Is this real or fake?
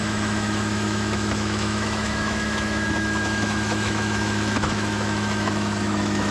fake